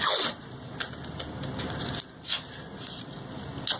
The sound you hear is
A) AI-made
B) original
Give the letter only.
B